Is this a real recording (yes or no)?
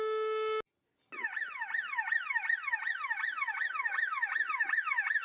yes